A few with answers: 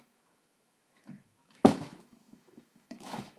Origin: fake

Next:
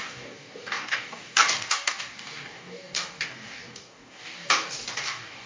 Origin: fake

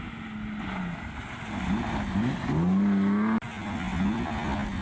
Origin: real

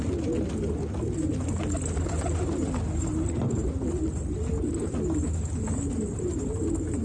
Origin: real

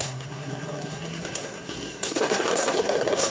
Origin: fake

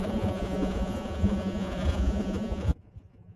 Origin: fake